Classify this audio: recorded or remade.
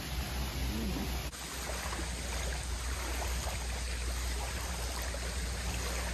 recorded